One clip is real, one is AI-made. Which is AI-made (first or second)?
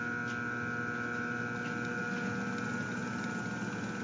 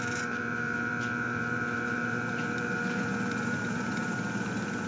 second